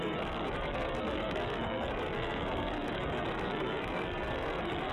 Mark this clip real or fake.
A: fake